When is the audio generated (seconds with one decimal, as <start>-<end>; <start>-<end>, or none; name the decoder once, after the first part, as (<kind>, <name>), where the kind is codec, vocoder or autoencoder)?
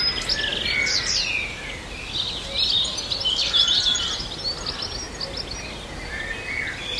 0.5-1.0 (vocoder, BigVGAN v2)